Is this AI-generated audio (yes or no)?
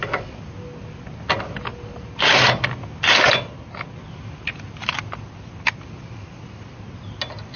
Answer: no